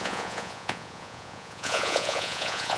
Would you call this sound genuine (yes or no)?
no